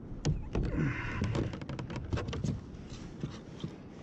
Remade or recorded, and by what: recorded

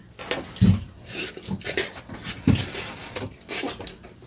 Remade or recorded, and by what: recorded